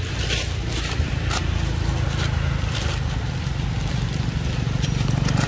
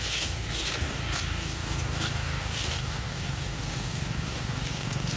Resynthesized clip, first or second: second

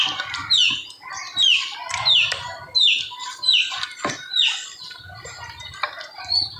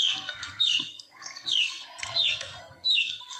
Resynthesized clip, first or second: second